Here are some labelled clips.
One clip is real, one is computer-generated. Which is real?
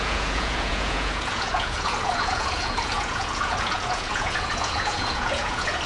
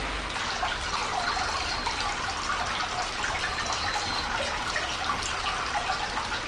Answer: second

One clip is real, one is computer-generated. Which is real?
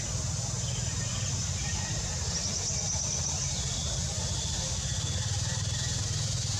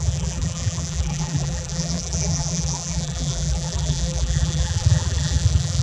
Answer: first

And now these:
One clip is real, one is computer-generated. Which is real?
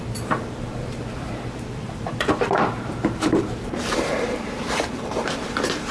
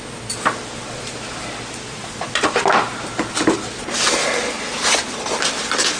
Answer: second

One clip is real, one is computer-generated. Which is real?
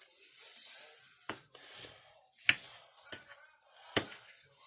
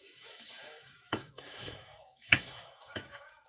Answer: first